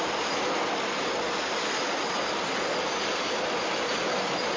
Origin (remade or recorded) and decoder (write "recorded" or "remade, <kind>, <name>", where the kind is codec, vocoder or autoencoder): recorded